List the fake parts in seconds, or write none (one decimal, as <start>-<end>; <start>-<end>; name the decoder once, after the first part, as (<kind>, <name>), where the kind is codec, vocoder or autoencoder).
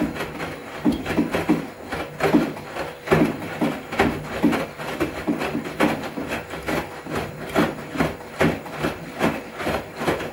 none